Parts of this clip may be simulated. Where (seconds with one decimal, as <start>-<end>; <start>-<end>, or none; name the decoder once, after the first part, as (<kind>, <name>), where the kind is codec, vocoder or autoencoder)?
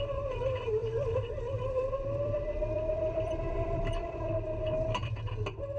0.8-4.3 (vocoder, BigVGAN v2)